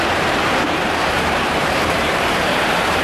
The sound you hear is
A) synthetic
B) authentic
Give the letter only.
A